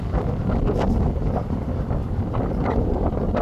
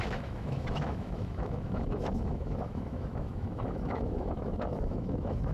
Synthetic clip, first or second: second